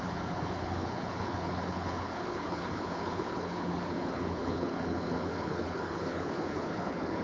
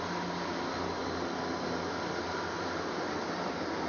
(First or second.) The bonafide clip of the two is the second